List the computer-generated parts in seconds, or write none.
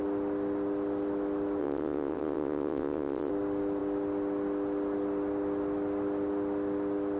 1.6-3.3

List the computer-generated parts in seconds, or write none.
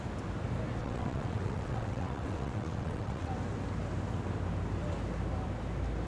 0.8-3.3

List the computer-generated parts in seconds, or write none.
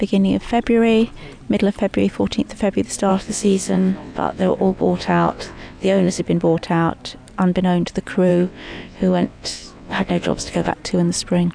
3.1-6.2; 8.3-10.7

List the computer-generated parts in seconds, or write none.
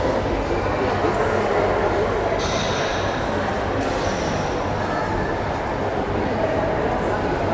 none